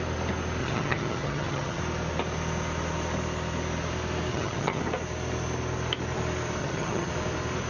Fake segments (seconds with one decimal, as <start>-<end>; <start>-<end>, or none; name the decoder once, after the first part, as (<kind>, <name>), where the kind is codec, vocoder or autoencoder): 0.6-1.8 (vocoder, HiFi-GAN); 4.3-4.8; 6.6-7.1